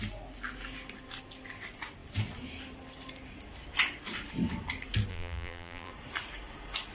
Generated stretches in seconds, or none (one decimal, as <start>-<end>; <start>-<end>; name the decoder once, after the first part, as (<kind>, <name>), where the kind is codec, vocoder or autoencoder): 5.1-5.9 (vocoder, BigVGAN v2)